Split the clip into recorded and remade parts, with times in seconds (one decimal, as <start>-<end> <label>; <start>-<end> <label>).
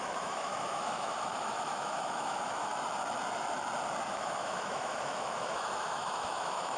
0.0-2.7 remade; 2.7-4.1 recorded; 4.1-6.8 remade